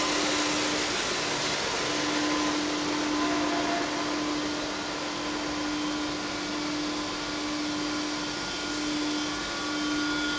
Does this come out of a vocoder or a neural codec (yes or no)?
no